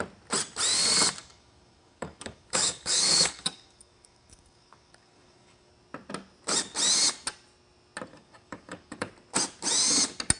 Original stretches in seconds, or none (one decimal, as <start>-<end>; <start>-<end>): 0.0-1.2; 5.7-8.1; 9.1-10.4